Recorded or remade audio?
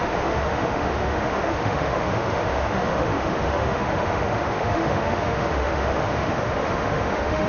remade